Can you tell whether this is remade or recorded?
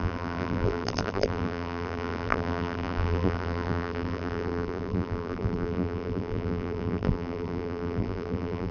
remade